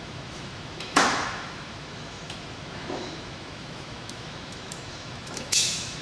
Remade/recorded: remade